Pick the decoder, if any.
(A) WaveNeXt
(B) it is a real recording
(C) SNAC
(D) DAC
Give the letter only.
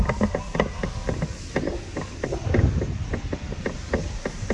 B